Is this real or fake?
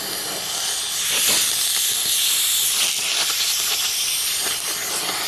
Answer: real